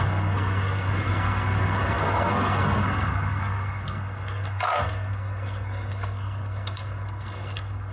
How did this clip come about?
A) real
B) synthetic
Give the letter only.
B